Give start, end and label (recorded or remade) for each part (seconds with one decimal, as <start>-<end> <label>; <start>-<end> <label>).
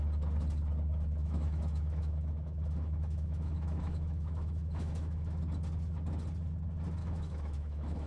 0.0-1.2 recorded; 1.2-5.4 remade; 5.4-7.0 recorded; 7.0-8.1 remade